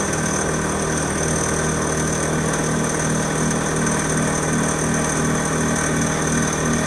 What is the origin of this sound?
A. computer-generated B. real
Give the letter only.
B